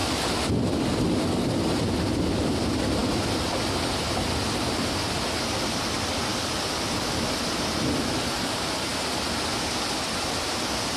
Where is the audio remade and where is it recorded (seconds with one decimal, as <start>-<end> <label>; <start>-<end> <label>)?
0.0-11.0 recorded